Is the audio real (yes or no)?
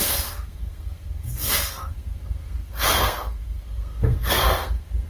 no